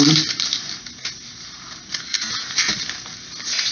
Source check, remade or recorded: recorded